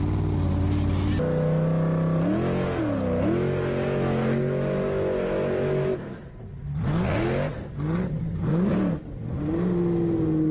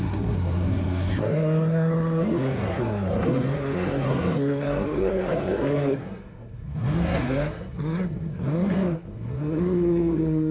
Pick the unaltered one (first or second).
first